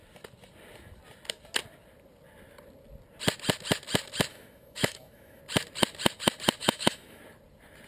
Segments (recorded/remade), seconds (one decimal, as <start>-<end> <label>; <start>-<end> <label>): 0.0-4.3 recorded; 4.3-5.4 remade; 5.4-6.6 recorded; 6.6-7.2 remade; 7.2-7.9 recorded